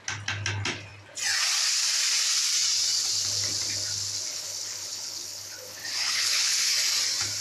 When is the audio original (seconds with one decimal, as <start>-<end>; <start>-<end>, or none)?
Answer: 0.0-4.3; 6.7-7.4